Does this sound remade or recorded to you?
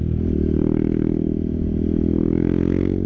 recorded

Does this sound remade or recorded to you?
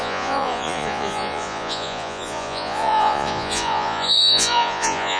remade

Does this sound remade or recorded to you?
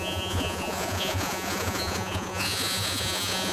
remade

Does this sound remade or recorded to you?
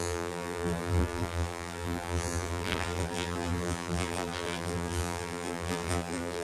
remade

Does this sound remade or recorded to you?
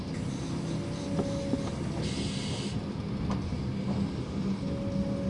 recorded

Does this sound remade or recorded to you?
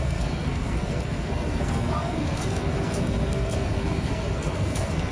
remade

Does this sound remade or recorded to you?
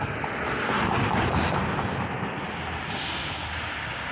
recorded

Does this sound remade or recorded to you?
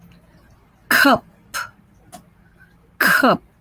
recorded